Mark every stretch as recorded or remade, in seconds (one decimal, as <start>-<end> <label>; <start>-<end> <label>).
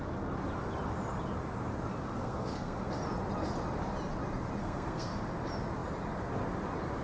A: 0.0-2.2 recorded; 2.2-2.9 remade; 2.9-4.6 recorded; 4.6-5.2 remade; 5.2-7.0 recorded